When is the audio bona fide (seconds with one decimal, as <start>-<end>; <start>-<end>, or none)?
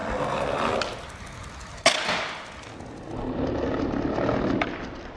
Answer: 0.0-5.2